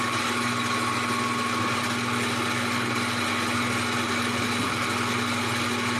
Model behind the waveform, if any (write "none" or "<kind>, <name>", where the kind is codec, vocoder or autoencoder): none